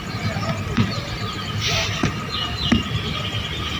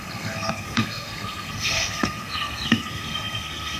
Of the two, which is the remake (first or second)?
second